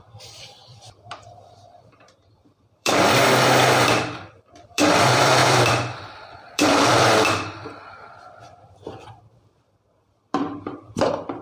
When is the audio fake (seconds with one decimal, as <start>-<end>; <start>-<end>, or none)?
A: 0.0-11.4